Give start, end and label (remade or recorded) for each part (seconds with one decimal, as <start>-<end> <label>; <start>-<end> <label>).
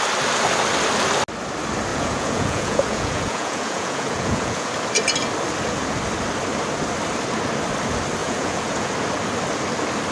0.0-1.9 recorded; 1.9-4.7 remade; 4.7-8.2 recorded; 8.2-8.9 remade; 8.9-10.1 recorded